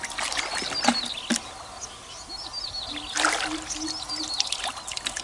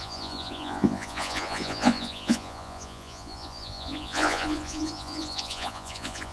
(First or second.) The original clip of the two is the first